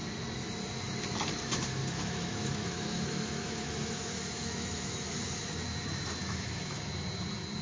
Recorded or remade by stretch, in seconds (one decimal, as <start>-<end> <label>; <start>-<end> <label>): 0.0-1.8 recorded; 1.8-5.2 remade; 5.2-6.2 recorded; 6.2-6.9 remade; 6.9-7.6 recorded

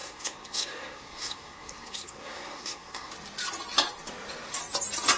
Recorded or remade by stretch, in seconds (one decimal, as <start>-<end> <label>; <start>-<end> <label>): 0.0-3.1 remade; 3.1-5.2 recorded